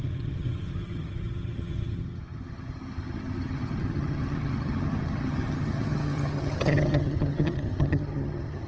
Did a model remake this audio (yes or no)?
yes